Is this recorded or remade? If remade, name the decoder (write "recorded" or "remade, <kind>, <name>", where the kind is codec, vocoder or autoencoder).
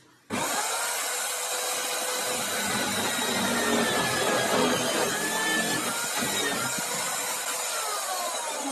recorded